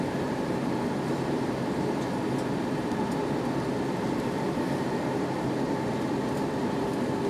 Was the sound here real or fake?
real